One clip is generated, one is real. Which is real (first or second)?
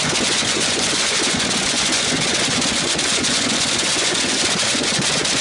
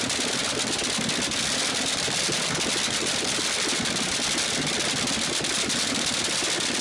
second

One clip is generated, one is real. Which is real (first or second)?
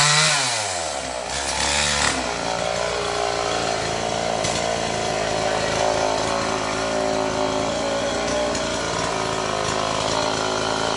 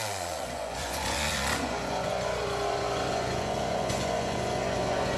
first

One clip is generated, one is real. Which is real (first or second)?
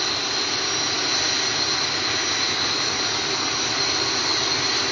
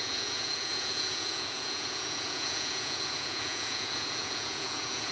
first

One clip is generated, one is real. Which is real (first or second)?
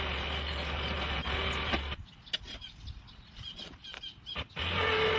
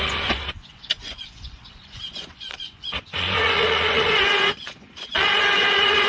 first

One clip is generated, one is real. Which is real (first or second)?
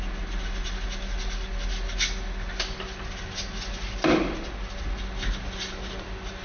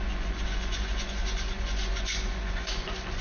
first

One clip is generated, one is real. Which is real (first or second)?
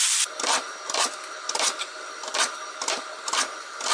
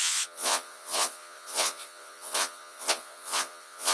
first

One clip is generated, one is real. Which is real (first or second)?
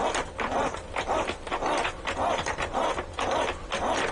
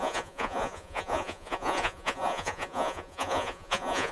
first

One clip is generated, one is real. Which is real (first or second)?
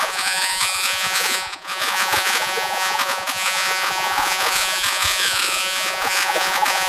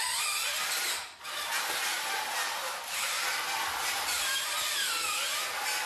second